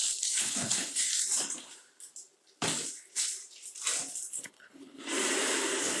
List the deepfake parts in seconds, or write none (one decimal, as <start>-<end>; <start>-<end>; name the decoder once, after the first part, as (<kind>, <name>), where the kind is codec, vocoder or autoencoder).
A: 0.0-1.1 (codec, HILCodec); 4.3-5.0